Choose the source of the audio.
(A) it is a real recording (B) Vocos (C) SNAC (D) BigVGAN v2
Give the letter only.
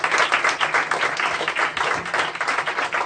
A